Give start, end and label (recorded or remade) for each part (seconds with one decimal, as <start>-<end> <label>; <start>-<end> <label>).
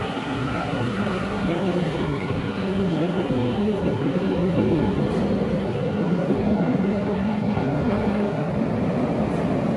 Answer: 0.0-5.0 remade; 5.0-5.6 recorded; 5.6-8.5 remade; 8.5-9.8 recorded